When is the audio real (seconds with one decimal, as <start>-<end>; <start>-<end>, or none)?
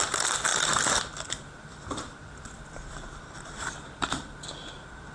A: none